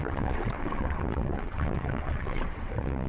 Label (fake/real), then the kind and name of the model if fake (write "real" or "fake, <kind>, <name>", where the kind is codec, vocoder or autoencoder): fake, vocoder, WaveNeXt